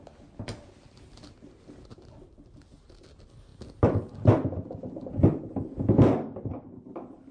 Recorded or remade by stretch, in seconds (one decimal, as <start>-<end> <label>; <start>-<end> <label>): 0.0-7.3 recorded